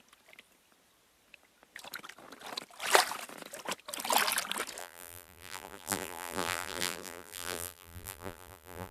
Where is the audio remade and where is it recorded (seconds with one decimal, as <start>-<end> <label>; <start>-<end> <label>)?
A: 0.0-4.8 recorded; 4.8-8.9 remade